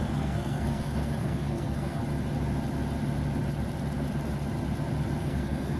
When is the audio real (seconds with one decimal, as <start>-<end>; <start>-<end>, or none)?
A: 2.0-5.2